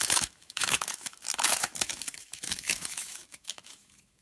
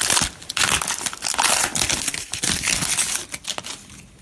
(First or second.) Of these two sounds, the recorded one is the second